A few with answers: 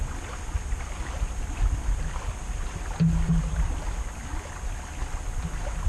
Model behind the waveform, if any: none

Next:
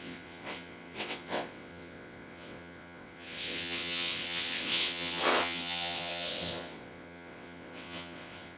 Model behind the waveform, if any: vocoder, WaveNeXt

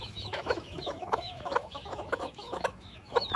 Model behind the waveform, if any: autoencoder, DAC-VAE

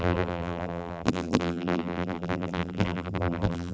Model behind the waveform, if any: vocoder, BigVGAN v2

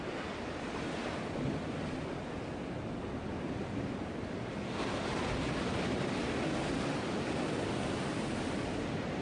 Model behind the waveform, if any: none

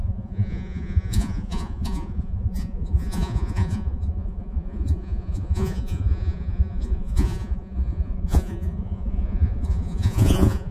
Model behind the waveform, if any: vocoder, Vocos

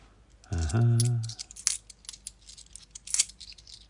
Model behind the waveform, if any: none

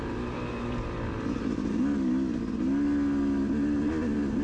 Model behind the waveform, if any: none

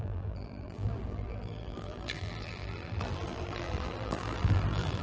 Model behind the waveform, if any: vocoder, BigVGAN v2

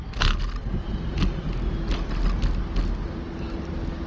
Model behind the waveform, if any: none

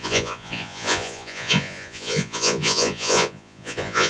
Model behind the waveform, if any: vocoder, Vocos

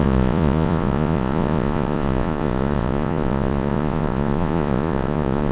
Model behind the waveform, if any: vocoder, Vocos